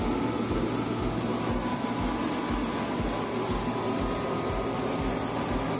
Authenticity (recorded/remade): recorded